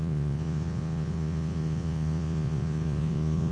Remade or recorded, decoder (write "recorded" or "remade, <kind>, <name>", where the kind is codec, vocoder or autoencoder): remade, vocoder, Vocos